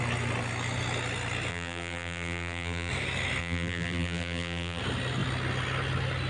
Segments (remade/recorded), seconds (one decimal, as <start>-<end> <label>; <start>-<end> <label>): 0.0-1.5 recorded; 1.5-2.9 remade; 2.9-3.4 recorded; 3.4-4.8 remade; 4.8-6.3 recorded